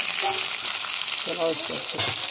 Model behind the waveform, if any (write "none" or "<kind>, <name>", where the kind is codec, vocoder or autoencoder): none